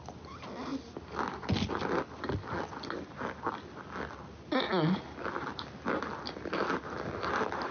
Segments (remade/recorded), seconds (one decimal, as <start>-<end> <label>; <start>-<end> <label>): 0.0-7.7 recorded